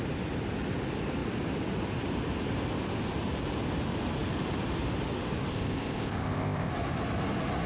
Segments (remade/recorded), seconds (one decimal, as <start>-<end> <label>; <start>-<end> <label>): 0.0-5.5 recorded; 5.5-6.7 remade; 6.7-7.7 recorded